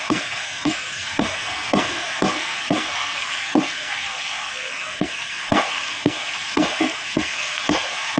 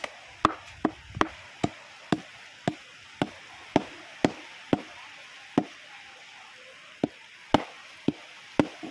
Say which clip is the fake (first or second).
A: first